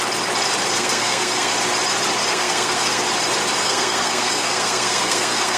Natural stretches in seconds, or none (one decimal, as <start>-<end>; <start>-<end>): 0.0-0.7; 1.5-2.3; 3.0-3.6

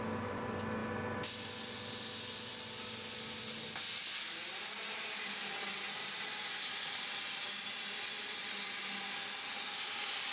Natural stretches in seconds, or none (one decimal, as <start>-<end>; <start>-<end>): 0.0-10.3

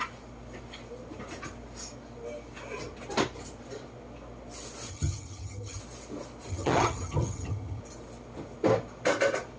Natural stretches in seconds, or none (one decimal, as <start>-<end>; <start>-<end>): 0.0-4.9; 5.8-6.5; 7.8-9.6

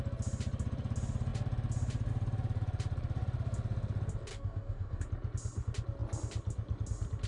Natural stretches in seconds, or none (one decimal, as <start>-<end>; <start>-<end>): 0.0-4.3; 5.0-7.3

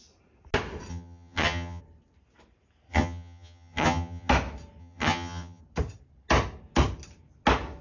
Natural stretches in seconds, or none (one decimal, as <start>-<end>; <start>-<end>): 0.0-0.9; 1.8-2.9; 4.3-4.8; 5.6-7.8

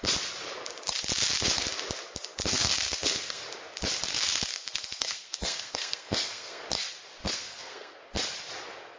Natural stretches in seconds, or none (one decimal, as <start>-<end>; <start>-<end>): 0.0-2.5; 3.4-4.1; 6.6-7.2; 8.0-9.0

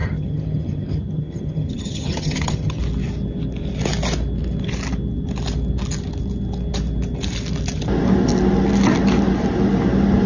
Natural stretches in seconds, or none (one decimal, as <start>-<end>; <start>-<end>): 2.8-10.3